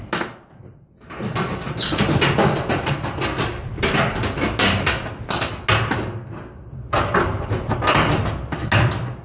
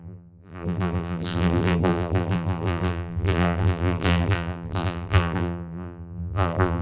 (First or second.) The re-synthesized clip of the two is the second